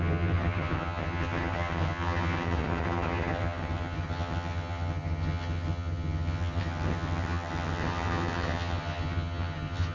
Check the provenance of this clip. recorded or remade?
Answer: remade